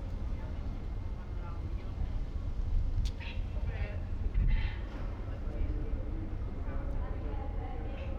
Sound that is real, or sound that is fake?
real